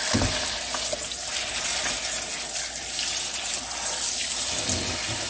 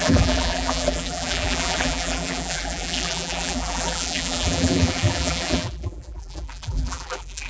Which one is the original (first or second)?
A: first